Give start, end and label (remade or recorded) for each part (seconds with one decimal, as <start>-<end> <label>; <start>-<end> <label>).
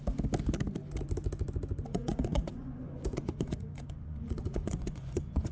0.0-1.9 recorded; 1.9-5.5 remade